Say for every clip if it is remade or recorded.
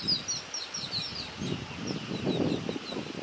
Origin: recorded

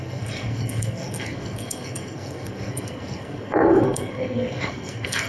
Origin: remade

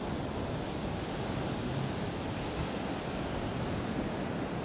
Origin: recorded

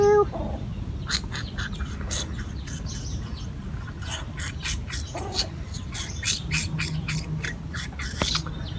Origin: recorded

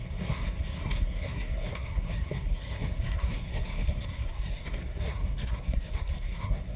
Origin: remade